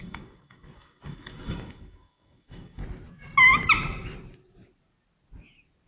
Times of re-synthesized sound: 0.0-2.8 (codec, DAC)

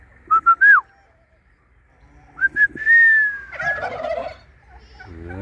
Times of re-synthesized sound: none

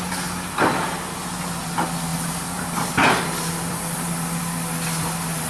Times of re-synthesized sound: none

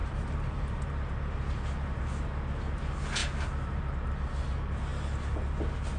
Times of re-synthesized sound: 0.0-1.5 (vocoder, BigVGAN v2)

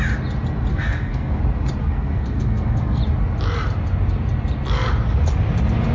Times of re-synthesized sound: 0.7-1.4 (codec, SNAC); 1.8-3.0

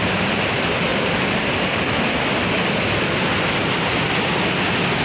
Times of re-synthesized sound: none